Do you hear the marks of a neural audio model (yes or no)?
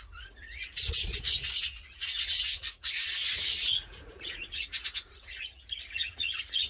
yes